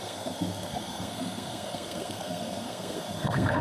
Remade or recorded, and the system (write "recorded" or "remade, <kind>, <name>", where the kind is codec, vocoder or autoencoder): remade, codec, SNAC